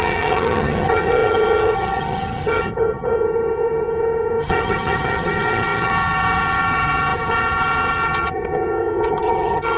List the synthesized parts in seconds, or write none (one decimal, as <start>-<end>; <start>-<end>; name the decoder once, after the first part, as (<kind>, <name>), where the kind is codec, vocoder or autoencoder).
0.0-9.8 (vocoder, HiFi-GAN)